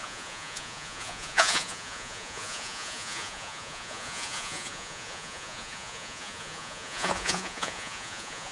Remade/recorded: remade